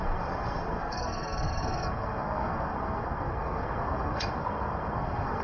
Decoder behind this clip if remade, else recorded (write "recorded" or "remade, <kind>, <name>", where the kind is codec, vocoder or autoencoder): remade, codec, SNAC